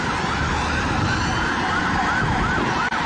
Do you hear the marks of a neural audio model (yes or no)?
no